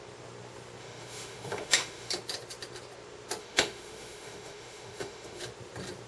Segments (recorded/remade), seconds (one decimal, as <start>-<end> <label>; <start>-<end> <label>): 0.0-0.8 recorded; 0.8-2.1 remade; 2.1-3.4 recorded; 3.4-5.4 remade; 5.4-6.1 recorded